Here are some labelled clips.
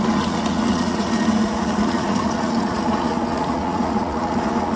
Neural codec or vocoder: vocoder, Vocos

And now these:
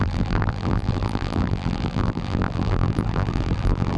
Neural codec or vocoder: vocoder, BigVGAN v2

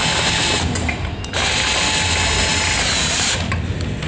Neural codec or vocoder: none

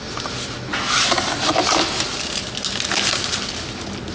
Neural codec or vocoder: none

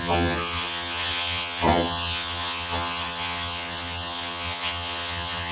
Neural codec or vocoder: vocoder, HiFi-GAN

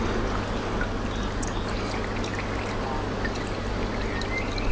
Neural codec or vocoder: none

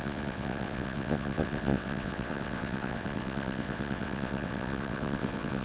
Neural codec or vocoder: vocoder, WaveNeXt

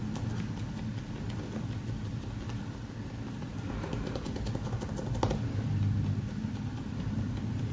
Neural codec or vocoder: none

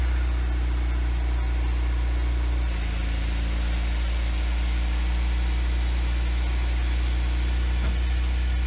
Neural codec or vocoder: none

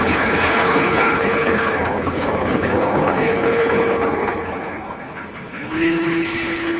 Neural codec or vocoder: codec, HILCodec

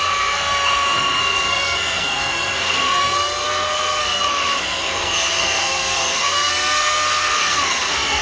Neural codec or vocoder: codec, SNAC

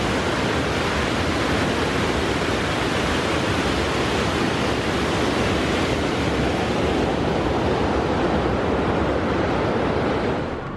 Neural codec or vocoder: none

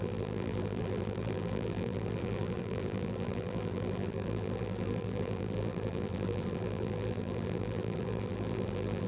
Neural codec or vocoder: vocoder, BigVGAN v2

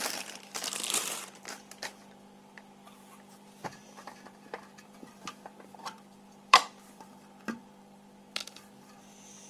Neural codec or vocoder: vocoder, BigVGAN v2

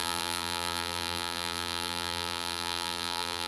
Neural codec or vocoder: vocoder, BigVGAN v2